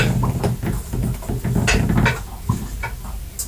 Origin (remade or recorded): recorded